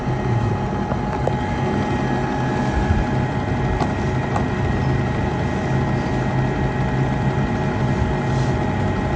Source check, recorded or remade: recorded